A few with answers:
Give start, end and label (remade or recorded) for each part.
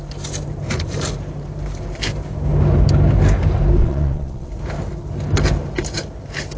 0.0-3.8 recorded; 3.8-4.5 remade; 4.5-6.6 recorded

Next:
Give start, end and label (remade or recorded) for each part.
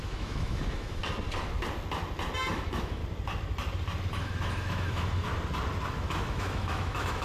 0.0-1.0 remade; 1.0-2.5 recorded; 2.5-3.0 remade; 3.0-4.1 recorded; 4.1-5.3 remade; 5.3-5.9 recorded; 5.9-7.2 remade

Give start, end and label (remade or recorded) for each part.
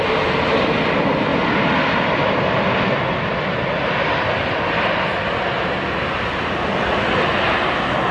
0.0-8.1 recorded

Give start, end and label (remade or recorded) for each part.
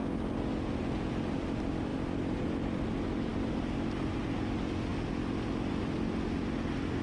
0.0-7.0 recorded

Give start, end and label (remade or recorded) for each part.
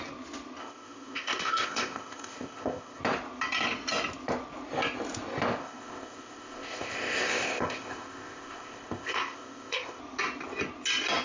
0.0-0.6 recorded; 0.6-3.0 remade; 3.0-5.6 recorded; 5.6-10.0 remade; 10.0-11.2 recorded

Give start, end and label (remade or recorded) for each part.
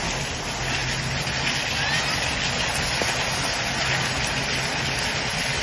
0.0-5.6 recorded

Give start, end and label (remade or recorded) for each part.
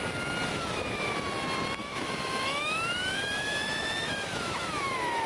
0.0-0.5 recorded; 0.5-1.1 remade; 1.1-1.8 recorded; 1.8-5.3 remade